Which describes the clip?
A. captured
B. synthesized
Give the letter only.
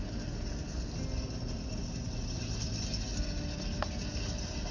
A